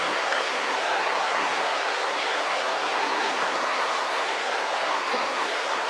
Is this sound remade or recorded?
remade